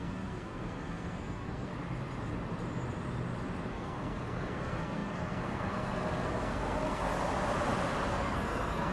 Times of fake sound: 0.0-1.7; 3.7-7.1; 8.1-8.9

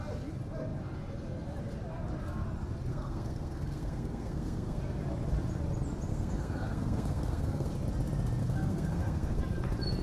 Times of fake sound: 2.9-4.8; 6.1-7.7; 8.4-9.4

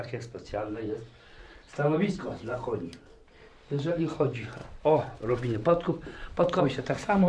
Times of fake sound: 0.0-7.3

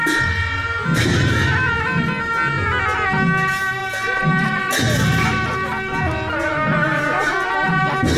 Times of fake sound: none

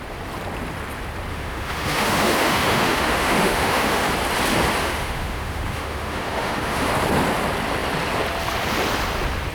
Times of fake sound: 1.3-4.1; 4.8-6.9